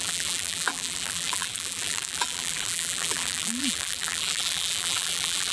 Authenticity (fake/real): fake